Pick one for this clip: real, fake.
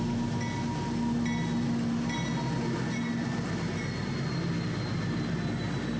real